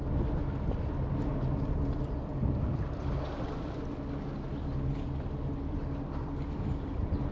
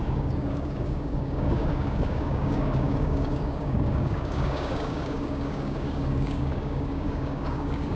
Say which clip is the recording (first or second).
first